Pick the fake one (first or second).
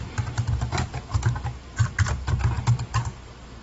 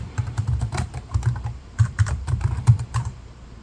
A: second